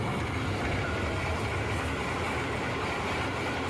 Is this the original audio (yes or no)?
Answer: yes